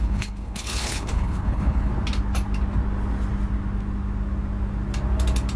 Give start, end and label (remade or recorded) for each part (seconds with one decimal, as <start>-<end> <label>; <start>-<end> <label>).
0.0-1.9 remade; 1.9-5.6 recorded